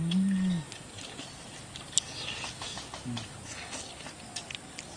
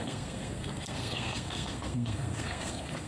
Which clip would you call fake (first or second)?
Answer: second